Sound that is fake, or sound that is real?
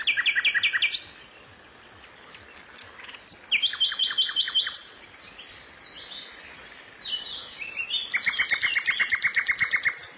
real